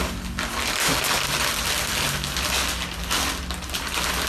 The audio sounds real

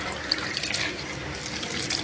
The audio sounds fake